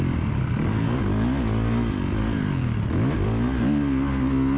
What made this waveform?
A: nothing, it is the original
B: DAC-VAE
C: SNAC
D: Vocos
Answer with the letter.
A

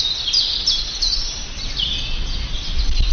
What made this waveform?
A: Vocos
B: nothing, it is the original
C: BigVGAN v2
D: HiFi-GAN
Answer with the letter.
B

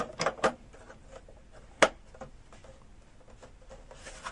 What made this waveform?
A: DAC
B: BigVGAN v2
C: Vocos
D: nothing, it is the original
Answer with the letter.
D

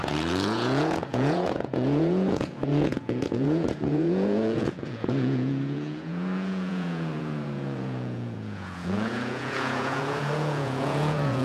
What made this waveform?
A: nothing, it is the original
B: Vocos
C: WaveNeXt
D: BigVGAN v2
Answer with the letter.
B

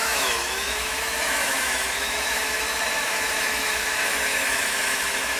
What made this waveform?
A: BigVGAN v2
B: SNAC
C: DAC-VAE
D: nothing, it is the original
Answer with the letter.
C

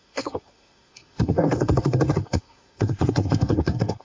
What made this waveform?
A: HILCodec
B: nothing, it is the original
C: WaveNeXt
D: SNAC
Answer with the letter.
D